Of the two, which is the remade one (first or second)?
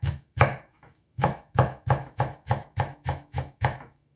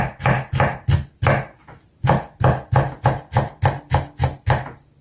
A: first